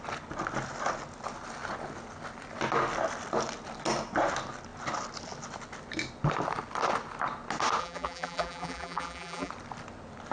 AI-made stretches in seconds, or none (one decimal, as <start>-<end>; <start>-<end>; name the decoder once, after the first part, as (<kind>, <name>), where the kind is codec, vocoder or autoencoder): 7.8-9.5 (vocoder, BigVGAN v2)